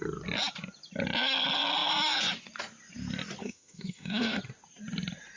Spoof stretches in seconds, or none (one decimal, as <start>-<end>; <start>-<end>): 3.4-4.4